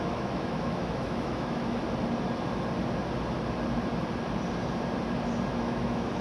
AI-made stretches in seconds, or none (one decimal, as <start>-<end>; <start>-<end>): 0.0-1.8; 5.5-6.2